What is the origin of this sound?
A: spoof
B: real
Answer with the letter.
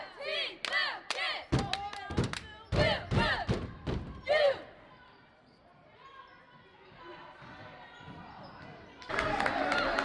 B